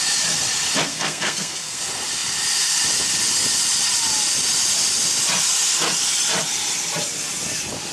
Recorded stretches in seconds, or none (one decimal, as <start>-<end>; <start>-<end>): 0.0-0.9; 1.8-7.9